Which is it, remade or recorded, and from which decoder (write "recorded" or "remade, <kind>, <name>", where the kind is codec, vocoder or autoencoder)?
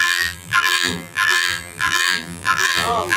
remade, vocoder, BigVGAN v2